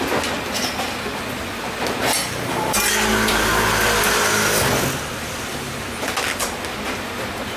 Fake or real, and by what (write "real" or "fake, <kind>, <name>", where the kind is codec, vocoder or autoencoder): real